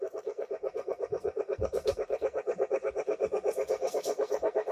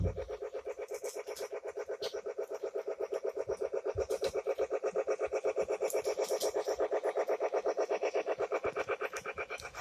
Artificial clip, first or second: first